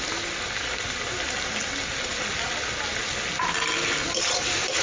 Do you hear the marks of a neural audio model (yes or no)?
no